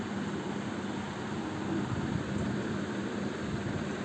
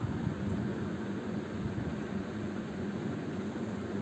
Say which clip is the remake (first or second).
second